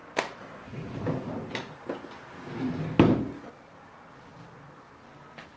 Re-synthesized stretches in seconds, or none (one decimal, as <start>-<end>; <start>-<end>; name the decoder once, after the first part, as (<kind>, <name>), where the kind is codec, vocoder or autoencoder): none